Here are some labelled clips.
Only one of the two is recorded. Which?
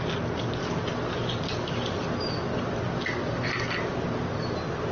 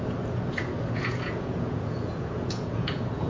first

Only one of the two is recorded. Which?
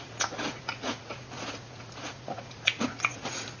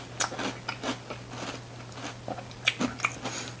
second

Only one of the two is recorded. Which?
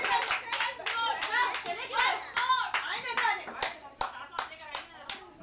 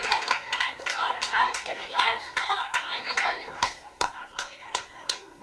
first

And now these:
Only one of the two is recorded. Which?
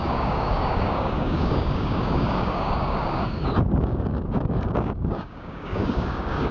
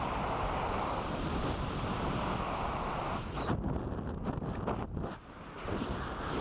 second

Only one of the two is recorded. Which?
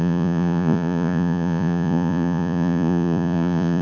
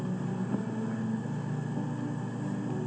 second